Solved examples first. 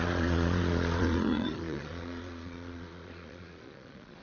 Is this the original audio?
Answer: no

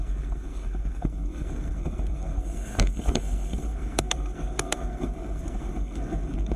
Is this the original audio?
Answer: no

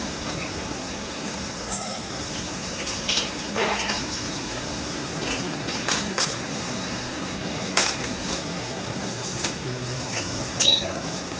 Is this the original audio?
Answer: no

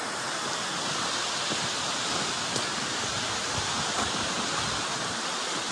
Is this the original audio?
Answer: yes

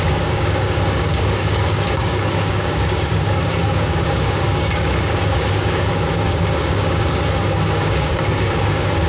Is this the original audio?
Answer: no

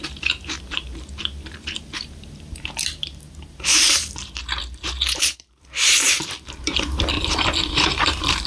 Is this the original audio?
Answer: no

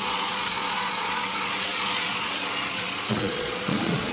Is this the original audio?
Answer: no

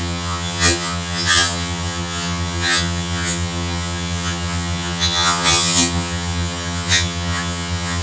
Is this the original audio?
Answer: no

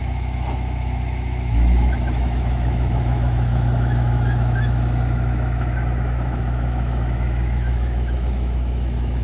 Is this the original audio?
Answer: no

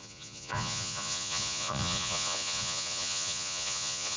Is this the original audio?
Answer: no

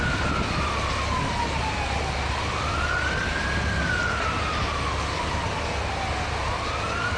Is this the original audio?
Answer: yes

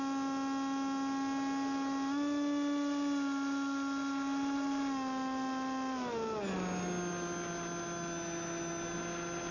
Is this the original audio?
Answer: yes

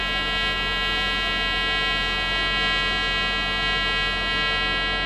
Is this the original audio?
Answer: yes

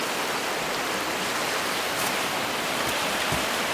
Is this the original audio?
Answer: yes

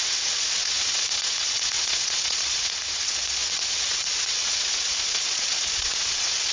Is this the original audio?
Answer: no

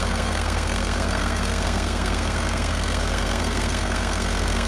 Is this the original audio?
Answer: no